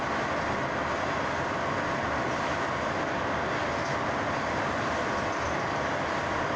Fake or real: real